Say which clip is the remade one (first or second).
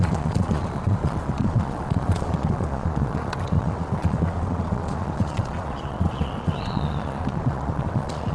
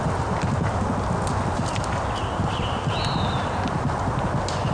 first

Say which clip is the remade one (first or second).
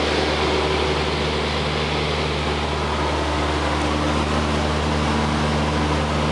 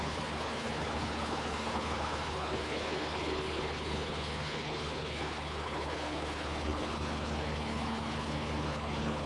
second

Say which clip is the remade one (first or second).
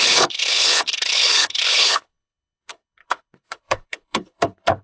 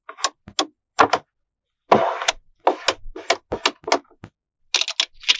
first